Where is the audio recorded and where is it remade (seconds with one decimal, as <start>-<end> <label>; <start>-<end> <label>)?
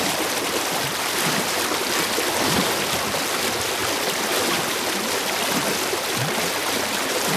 0.0-7.4 recorded